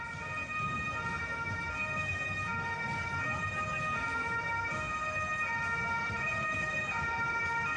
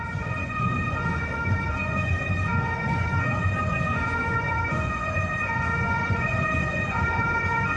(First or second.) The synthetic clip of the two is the second